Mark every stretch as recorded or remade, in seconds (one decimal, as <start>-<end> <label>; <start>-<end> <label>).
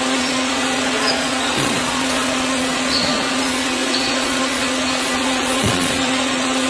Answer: 0.0-6.7 remade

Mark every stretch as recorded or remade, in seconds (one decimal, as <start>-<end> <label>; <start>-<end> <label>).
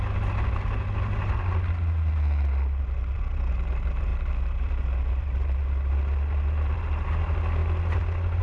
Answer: 0.0-8.4 recorded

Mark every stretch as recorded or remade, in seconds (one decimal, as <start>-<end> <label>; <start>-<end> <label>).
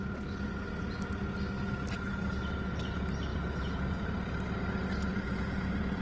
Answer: 0.0-3.3 recorded; 3.3-4.3 remade; 4.3-5.1 recorded; 5.1-6.0 remade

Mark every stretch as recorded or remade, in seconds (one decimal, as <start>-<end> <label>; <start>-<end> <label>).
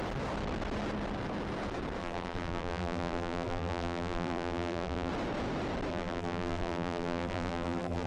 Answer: 0.0-2.0 recorded; 2.0-5.1 remade; 5.1-5.9 recorded; 5.9-8.1 remade